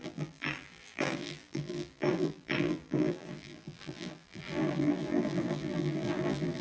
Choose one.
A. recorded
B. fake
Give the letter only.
B